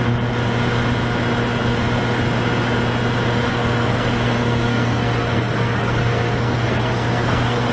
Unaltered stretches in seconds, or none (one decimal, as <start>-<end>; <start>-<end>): 0.0-3.5